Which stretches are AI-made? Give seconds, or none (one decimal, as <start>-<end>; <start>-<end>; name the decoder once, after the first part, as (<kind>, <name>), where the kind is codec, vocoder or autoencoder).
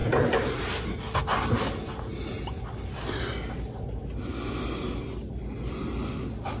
0.0-0.7 (vocoder, BigVGAN v2)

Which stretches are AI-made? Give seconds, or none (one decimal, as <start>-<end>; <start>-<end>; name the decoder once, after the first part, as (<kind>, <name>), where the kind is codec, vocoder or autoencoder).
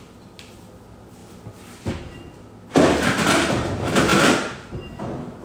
none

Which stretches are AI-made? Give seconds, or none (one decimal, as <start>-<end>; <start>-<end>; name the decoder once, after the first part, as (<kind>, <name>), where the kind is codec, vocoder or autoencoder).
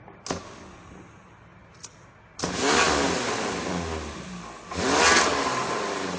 none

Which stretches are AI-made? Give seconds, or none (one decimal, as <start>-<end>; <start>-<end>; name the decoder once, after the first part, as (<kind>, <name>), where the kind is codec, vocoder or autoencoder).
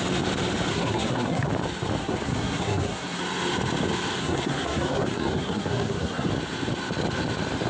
0.7-1.5 (codec, SNAC); 2.0-3.2; 4.2-6.3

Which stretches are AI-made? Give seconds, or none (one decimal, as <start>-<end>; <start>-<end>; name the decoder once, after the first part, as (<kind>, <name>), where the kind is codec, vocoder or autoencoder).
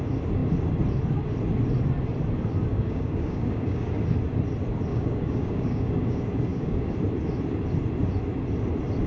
2.7-4.0 (codec, DAC); 4.9-6.9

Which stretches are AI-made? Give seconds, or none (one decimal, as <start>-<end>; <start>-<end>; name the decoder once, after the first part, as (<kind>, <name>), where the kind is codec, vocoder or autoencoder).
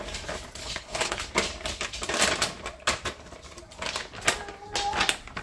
0.6-1.3 (codec, HILCodec)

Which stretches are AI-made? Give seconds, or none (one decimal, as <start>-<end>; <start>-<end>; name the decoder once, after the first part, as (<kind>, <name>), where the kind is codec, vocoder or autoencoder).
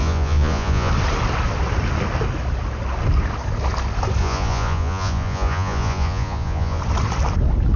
0.0-0.9 (vocoder, Vocos); 4.2-6.8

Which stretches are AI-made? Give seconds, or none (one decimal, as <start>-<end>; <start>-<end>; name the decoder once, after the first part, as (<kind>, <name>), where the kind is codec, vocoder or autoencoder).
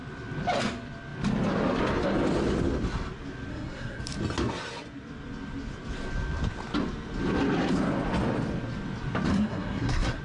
3.5-4.0 (codec, SNAC); 9.3-10.2